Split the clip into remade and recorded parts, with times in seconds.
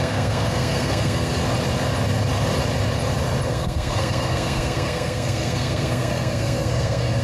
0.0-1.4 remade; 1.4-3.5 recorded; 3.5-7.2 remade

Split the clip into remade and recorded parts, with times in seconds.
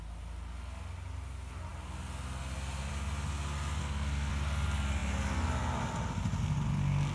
0.0-3.8 recorded; 3.8-4.3 remade; 4.3-7.1 recorded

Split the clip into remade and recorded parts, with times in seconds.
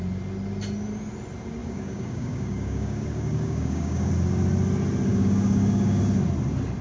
0.0-1.6 recorded; 1.6-4.1 remade; 4.1-5.1 recorded; 5.1-6.0 remade; 6.0-6.8 recorded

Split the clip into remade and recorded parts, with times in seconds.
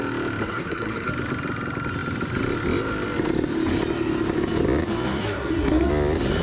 0.0-0.4 recorded; 0.4-1.1 remade; 1.1-5.2 recorded; 5.2-5.9 remade; 5.9-6.4 recorded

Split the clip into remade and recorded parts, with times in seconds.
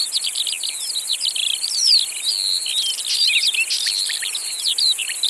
0.0-5.3 recorded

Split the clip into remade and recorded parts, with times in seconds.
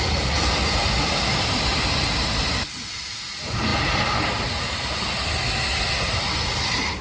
0.0-7.0 recorded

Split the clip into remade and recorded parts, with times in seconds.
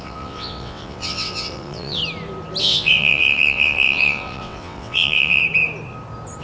0.0-2.0 remade; 2.0-2.6 recorded; 2.6-5.4 remade; 5.4-6.4 recorded